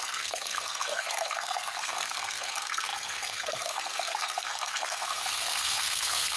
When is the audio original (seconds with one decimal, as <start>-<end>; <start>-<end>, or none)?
none